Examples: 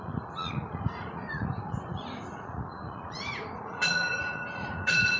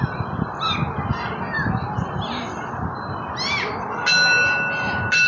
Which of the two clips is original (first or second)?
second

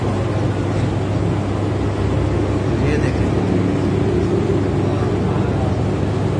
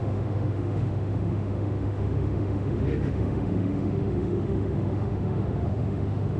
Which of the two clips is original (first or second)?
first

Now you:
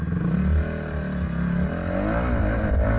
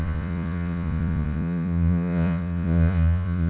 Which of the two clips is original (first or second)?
first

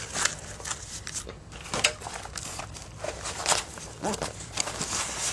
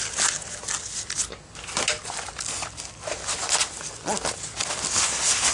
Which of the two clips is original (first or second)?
second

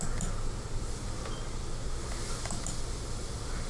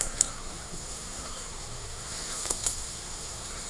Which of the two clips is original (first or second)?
first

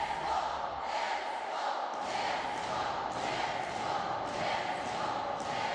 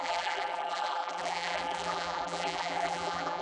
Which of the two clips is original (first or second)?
first